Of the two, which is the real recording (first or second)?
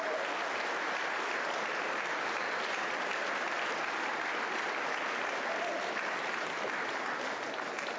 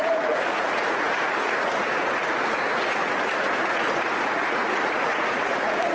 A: first